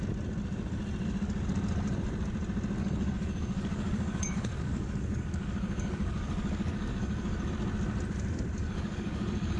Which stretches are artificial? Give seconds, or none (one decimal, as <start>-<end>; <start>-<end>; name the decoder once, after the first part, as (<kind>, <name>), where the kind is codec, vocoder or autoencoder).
2.8-7.5 (codec, DAC); 8.6-9.6